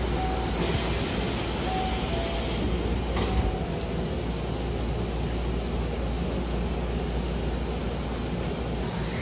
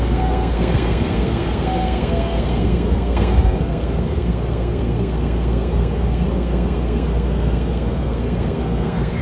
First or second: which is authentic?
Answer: first